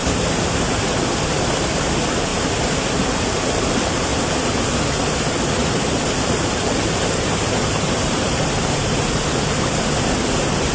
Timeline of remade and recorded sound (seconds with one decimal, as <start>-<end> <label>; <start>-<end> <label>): 0.0-0.5 remade; 0.5-2.3 recorded; 2.3-3.2 remade; 3.2-5.6 recorded; 5.6-9.0 remade; 9.0-10.7 recorded